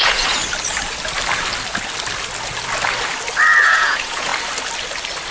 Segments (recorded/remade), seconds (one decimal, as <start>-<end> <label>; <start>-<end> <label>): 0.0-0.4 remade; 0.4-3.6 recorded; 3.6-4.3 remade; 4.3-5.3 recorded